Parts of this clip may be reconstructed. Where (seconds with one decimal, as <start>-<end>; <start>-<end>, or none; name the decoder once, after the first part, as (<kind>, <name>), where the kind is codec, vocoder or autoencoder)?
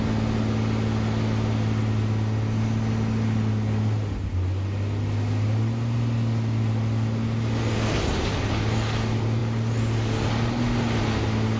none